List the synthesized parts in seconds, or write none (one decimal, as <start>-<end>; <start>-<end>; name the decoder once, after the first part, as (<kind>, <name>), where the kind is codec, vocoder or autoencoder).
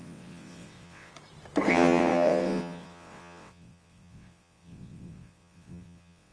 0.0-1.1 (vocoder, WaveNeXt); 1.7-6.3